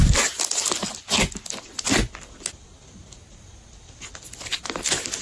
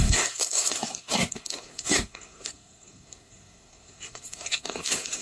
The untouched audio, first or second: first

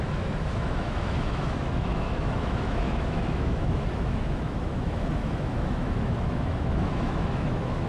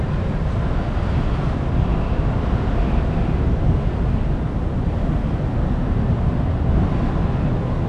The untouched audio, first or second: second